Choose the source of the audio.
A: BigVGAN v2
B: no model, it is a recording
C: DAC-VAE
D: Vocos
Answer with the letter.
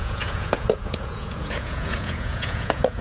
D